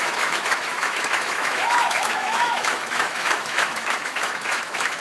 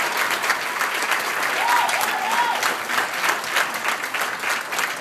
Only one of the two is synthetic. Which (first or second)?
first